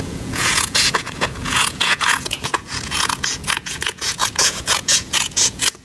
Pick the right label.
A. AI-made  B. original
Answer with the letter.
A